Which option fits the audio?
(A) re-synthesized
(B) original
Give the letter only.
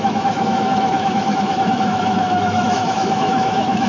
A